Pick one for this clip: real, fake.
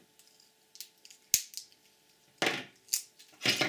real